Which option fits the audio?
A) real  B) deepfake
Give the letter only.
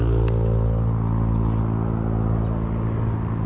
A